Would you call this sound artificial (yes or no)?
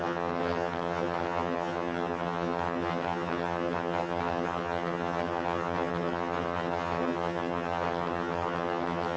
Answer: yes